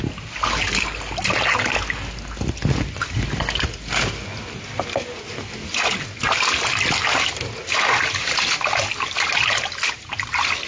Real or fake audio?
real